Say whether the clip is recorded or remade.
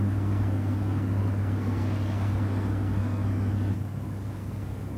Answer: remade